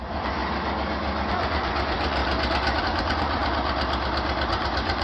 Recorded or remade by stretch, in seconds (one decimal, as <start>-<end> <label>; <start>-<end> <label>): 0.0-0.4 remade; 0.4-1.3 recorded; 1.3-2.2 remade; 2.2-2.8 recorded; 2.8-3.4 remade; 3.4-4.5 recorded; 4.5-5.0 remade